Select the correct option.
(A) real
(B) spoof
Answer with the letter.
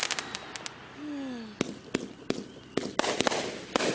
A